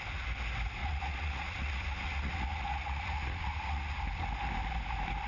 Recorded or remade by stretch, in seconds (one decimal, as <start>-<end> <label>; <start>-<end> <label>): 0.0-0.8 recorded; 0.8-4.0 remade; 4.0-5.3 recorded